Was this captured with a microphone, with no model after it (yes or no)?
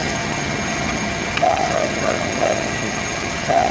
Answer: no